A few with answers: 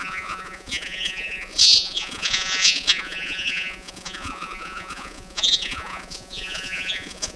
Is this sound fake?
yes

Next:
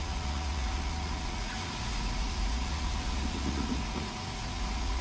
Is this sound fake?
yes